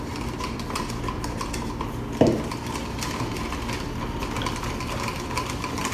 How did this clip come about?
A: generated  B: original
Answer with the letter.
B